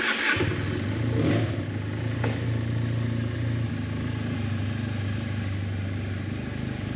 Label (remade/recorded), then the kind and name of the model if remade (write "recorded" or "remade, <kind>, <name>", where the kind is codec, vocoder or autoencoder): recorded